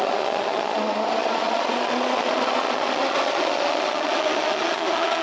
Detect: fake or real fake